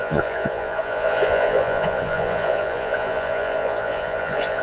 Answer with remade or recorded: remade